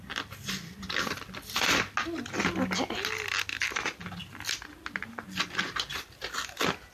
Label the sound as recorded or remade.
recorded